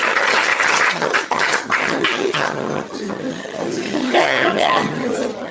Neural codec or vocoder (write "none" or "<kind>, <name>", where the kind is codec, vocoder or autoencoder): vocoder, HiFi-GAN